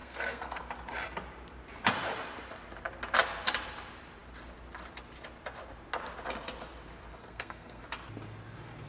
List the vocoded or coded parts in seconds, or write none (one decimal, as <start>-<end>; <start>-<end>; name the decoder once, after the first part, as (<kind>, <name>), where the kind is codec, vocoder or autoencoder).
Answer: 0.0-0.6 (codec, SNAC); 7.2-7.8